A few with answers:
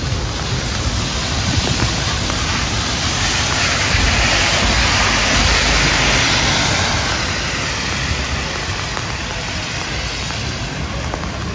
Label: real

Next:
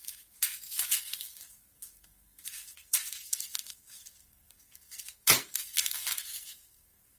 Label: fake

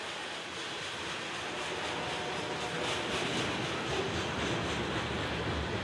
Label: real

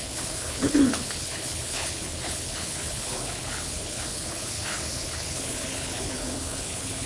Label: fake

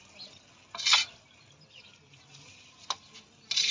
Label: real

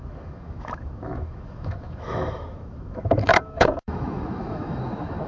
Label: fake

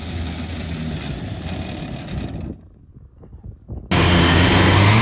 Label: real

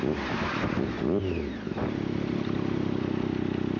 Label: real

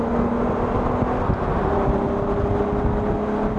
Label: real